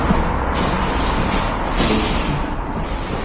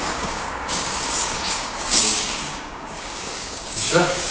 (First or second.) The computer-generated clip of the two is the second